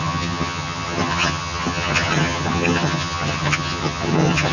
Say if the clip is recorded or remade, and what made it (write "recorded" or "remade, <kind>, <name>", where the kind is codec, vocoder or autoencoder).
remade, vocoder, HiFi-GAN